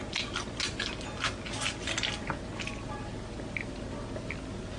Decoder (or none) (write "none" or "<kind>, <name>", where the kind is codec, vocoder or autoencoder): none